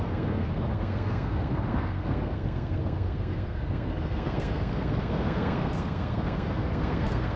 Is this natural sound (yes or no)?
no